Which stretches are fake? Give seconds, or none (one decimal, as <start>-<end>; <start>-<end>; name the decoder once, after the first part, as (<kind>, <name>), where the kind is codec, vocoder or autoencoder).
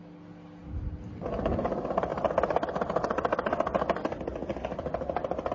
none